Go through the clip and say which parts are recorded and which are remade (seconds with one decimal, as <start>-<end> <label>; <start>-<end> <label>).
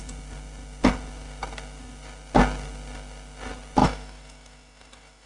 0.0-3.8 recorded; 3.8-5.3 remade